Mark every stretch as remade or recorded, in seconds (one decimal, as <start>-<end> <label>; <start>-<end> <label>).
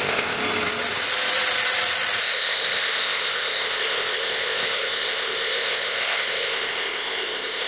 0.0-0.4 remade; 0.4-2.2 recorded; 2.2-7.7 remade